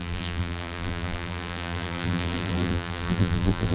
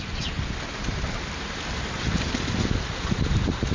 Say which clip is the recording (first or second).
second